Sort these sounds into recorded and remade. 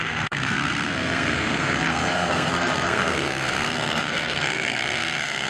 remade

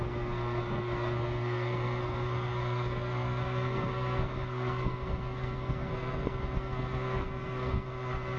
remade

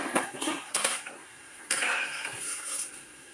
remade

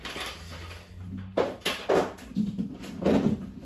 recorded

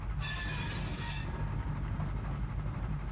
recorded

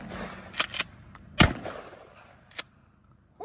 recorded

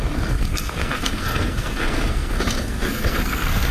remade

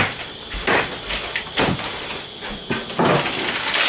recorded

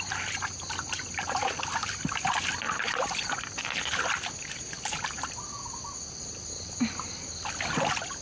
recorded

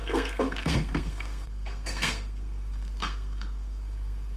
remade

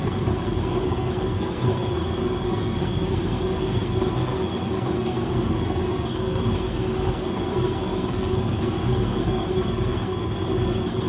remade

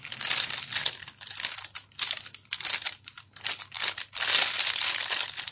recorded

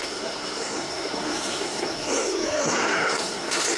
remade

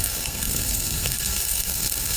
remade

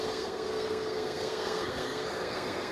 remade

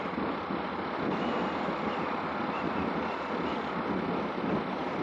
recorded